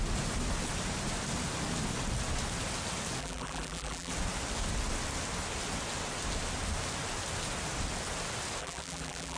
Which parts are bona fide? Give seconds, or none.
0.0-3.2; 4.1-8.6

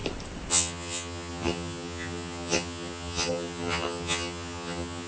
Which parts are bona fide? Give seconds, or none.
0.0-0.5

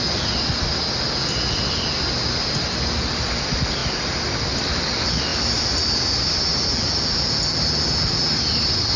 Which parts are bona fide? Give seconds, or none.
0.0-9.0

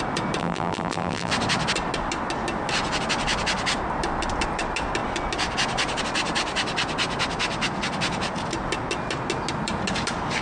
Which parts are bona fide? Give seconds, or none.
0.0-0.4; 1.3-10.4

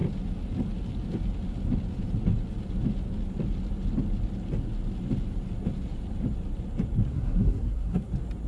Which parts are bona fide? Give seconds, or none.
0.0-7.1; 8.1-8.5

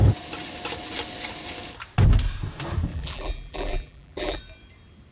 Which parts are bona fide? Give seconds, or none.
0.0-2.9; 4.4-5.1